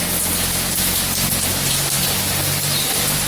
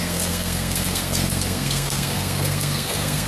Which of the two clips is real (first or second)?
first